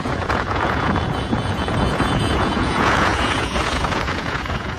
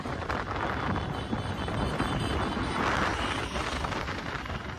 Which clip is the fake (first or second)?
first